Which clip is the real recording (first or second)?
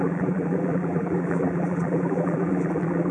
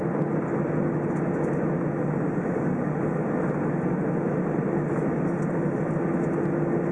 second